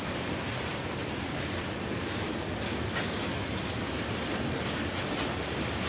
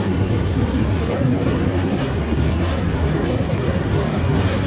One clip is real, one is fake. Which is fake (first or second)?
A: second